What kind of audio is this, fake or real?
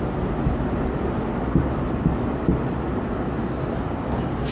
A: real